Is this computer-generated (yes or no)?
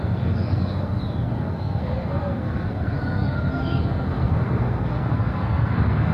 yes